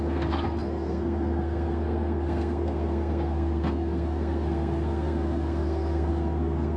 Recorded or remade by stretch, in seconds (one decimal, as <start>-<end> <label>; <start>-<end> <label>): 0.0-6.8 remade